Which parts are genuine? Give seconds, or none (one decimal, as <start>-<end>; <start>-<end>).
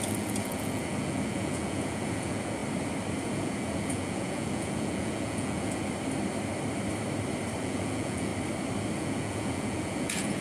2.6-3.2; 5.8-7.6; 8.3-9.0